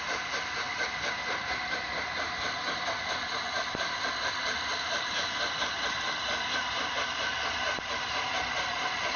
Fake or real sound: fake